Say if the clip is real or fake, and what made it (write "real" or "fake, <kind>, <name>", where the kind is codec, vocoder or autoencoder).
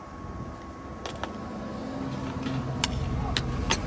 real